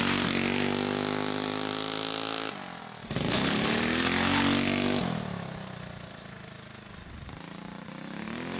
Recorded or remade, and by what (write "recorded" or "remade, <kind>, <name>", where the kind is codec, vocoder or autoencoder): recorded